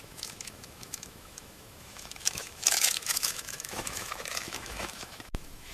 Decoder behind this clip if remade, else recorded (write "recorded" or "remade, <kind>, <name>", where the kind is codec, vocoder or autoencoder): remade, autoencoder, DAC-VAE